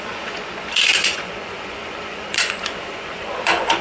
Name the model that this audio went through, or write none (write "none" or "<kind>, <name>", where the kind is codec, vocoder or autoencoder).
vocoder, Vocos